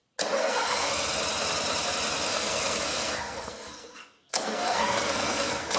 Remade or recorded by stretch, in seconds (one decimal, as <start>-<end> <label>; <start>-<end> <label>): 0.0-0.4 recorded; 0.4-0.9 remade; 0.9-2.3 recorded; 2.3-5.8 remade